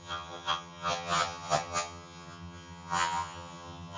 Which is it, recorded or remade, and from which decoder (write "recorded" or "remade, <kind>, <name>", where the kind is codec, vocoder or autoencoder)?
remade, vocoder, HiFi-GAN